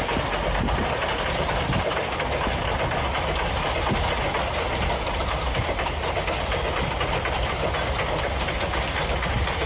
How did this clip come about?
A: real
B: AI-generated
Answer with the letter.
A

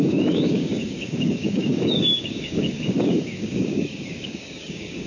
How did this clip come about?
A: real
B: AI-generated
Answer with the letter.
B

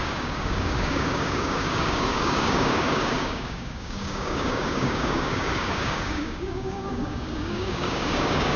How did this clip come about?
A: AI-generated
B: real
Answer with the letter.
A